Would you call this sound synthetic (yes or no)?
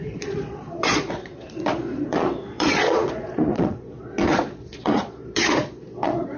yes